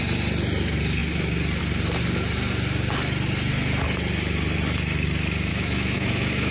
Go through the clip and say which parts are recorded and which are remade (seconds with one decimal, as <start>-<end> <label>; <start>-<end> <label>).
0.0-5.5 recorded; 5.5-6.5 remade